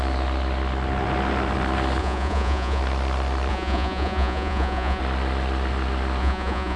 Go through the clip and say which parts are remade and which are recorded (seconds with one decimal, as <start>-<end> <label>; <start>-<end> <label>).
0.0-2.0 recorded; 2.0-2.8 remade; 2.8-3.5 recorded; 3.5-5.0 remade; 5.0-6.2 recorded; 6.2-6.8 remade